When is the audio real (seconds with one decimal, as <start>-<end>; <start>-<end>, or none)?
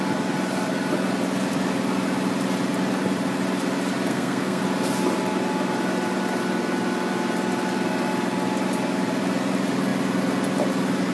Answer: 0.0-4.1; 4.6-11.1